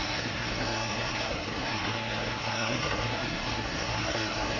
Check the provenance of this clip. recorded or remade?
remade